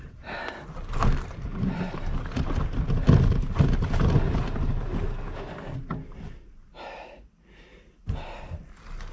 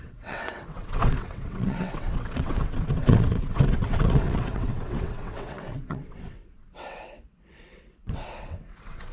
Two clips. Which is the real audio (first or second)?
first